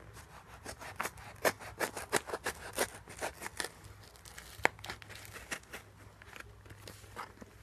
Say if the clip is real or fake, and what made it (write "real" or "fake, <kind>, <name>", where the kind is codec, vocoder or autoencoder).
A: real